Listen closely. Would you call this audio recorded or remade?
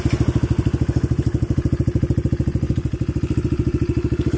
recorded